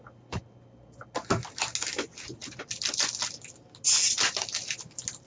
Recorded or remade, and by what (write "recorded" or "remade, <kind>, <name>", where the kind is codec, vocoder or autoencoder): recorded